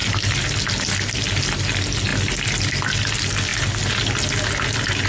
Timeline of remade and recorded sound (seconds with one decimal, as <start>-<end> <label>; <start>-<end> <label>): 0.0-5.1 recorded